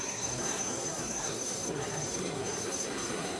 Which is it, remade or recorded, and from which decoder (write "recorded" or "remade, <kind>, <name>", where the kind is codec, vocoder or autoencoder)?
remade, codec, SNAC